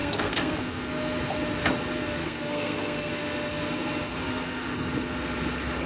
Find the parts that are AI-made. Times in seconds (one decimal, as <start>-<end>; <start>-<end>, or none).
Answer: 0.0-0.6; 2.2-3.1